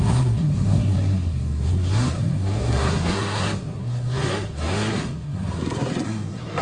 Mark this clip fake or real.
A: fake